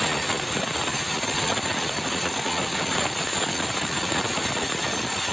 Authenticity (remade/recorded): remade